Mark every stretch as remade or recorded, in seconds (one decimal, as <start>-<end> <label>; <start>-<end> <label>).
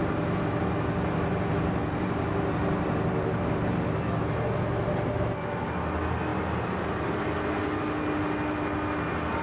0.0-9.4 recorded